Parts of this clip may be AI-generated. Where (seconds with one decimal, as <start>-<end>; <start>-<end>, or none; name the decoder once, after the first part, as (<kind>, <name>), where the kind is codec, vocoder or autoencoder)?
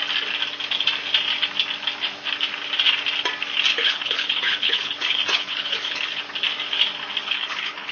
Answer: 3.7-6.2 (codec, HILCodec); 7.2-7.9